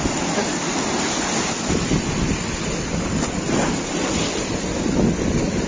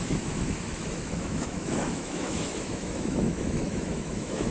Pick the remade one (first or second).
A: second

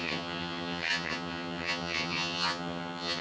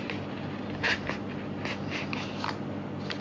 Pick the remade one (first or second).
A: first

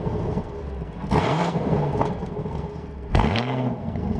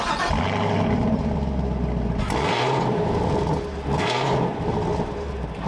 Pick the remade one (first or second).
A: first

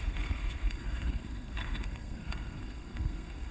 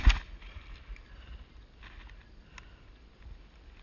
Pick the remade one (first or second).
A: first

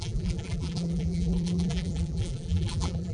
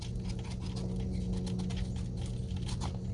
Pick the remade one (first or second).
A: first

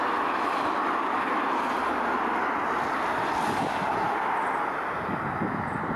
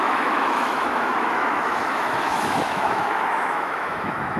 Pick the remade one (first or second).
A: second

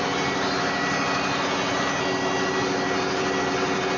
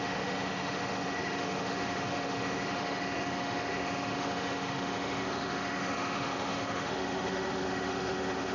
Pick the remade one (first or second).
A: second